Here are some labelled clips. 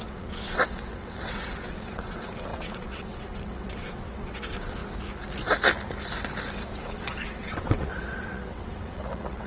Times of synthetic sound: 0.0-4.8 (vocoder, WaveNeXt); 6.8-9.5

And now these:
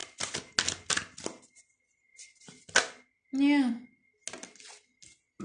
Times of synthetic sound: none

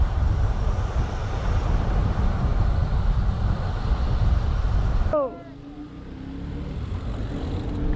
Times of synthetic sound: none

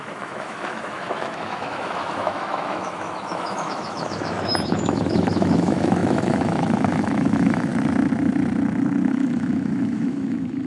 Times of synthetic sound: 0.0-7.7 (autoencoder, DAC-VAE); 9.1-10.7

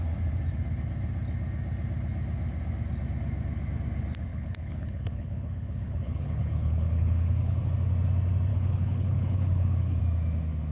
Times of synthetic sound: 4.3-7.7 (codec, HILCodec); 8.5-10.0

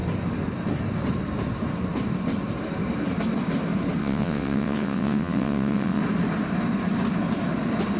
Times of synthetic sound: 4.0-6.0 (vocoder, WaveNeXt)

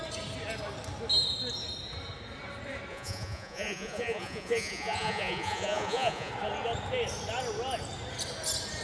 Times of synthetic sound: 2.9-6.3 (vocoder, Vocos)